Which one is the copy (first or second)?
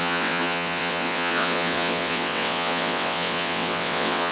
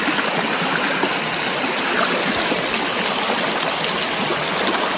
first